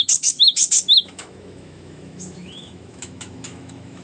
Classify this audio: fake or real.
fake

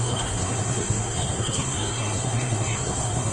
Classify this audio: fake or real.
fake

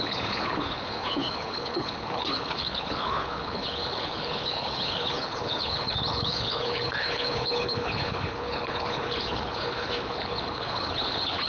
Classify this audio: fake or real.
fake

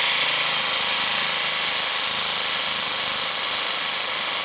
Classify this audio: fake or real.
real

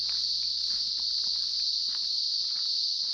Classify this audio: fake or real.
real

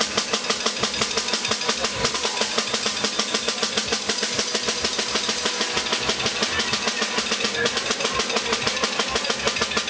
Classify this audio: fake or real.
real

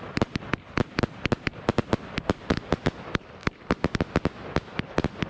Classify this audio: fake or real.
real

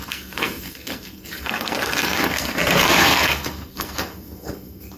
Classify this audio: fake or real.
fake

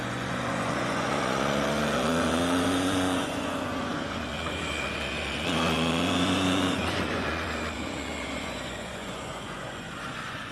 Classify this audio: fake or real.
fake